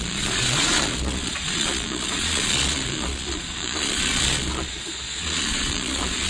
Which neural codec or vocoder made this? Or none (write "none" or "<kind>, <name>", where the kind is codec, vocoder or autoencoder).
vocoder, Vocos